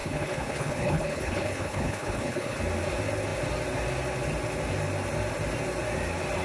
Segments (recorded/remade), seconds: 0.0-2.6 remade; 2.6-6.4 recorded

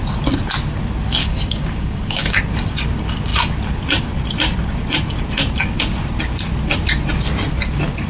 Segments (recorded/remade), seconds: 0.0-1.2 recorded; 1.2-2.4 remade; 2.4-8.1 recorded

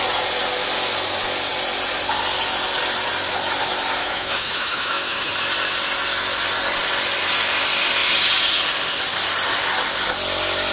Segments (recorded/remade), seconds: 0.0-4.0 recorded; 4.0-5.3 remade; 5.3-10.7 recorded

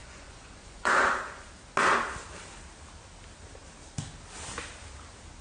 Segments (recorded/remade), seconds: 0.0-1.5 remade; 1.5-5.4 recorded

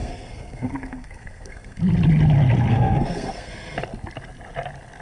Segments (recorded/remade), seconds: 0.0-1.8 remade; 1.8-2.7 recorded; 2.7-3.5 remade; 3.5-5.0 recorded

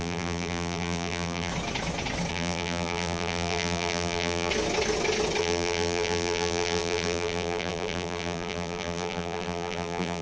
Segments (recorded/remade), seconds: 0.0-1.5 remade; 1.5-2.3 recorded; 2.3-4.5 remade; 4.5-5.4 recorded; 5.4-10.2 remade

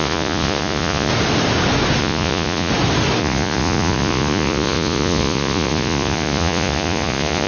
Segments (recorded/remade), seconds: 0.0-1.1 remade; 1.1-2.0 recorded; 2.0-2.7 remade; 2.7-3.2 recorded; 3.2-7.5 remade